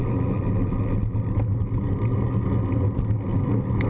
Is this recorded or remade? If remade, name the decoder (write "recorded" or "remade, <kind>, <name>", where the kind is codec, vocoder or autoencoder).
recorded